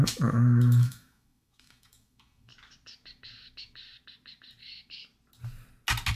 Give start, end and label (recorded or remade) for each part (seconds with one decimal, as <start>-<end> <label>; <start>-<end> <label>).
0.0-2.5 remade; 2.5-6.2 recorded